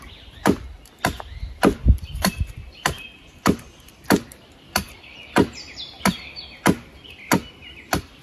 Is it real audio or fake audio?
real